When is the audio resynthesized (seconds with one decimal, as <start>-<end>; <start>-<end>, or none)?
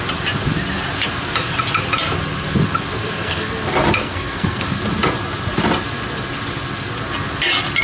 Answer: 2.9-3.5; 4.0-4.8